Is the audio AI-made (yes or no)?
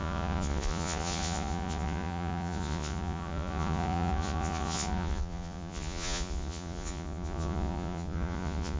yes